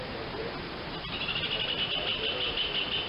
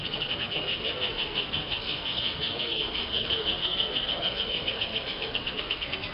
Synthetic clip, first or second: second